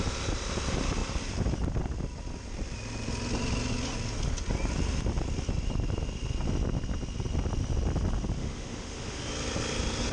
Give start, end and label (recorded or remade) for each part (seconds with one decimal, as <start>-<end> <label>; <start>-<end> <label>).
0.0-8.4 recorded; 8.4-9.2 remade; 9.2-10.1 recorded